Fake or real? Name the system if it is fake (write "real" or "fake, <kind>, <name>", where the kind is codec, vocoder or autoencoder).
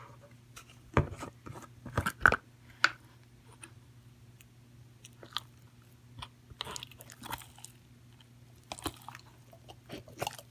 real